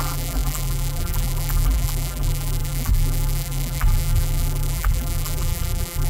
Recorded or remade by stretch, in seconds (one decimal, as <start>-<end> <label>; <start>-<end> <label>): 0.0-6.1 remade